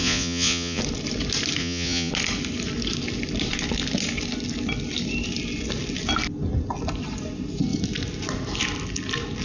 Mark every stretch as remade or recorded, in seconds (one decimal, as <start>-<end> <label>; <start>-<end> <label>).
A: 0.0-0.8 remade; 0.8-1.6 recorded; 1.6-2.1 remade; 2.1-9.4 recorded